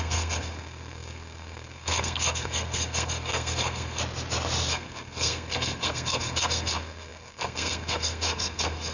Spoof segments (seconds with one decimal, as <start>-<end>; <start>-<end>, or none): 0.0-4.0; 4.7-8.9